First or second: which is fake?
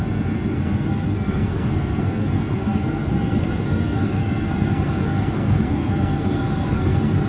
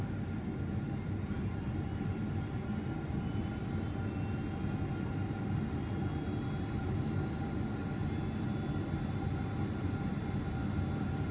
first